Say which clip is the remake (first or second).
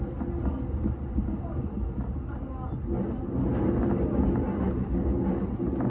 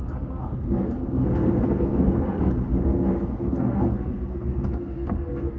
second